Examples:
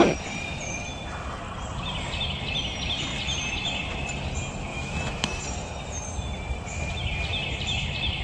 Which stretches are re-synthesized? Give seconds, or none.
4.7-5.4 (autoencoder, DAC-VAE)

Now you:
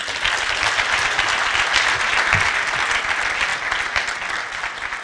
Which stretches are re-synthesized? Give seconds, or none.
none